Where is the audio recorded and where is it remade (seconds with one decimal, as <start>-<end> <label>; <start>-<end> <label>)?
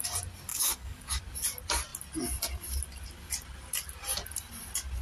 0.0-0.5 recorded; 0.5-1.2 remade; 1.2-5.0 recorded